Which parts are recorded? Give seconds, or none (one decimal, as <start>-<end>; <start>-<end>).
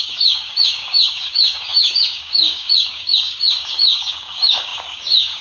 none